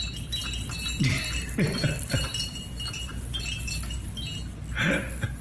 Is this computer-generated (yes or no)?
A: no